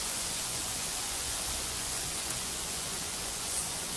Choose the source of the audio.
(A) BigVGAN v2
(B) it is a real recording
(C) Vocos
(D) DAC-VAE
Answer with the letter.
C